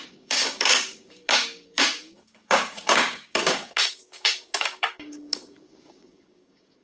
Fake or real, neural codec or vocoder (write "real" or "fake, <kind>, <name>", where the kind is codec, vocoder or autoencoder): fake, codec, DAC